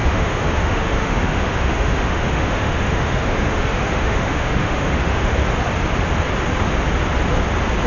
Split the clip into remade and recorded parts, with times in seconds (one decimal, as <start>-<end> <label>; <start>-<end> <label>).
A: 0.0-5.3 remade; 5.3-7.9 recorded